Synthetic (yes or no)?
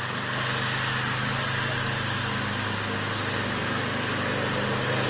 no